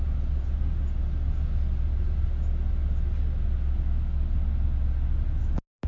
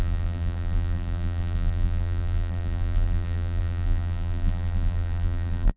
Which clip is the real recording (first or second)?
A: first